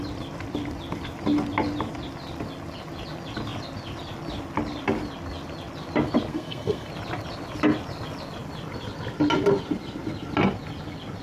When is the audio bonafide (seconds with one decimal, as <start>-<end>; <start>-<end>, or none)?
0.0-6.3; 6.9-11.2